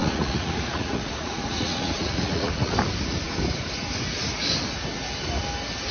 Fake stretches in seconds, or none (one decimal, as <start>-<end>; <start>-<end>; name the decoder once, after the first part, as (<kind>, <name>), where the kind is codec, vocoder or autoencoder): 0.0-2.7 (vocoder, Vocos)